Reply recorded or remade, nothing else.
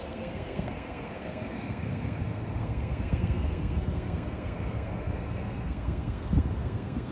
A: remade